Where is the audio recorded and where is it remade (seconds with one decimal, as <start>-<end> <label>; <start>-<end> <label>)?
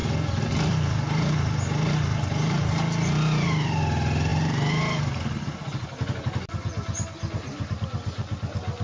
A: 0.0-8.8 recorded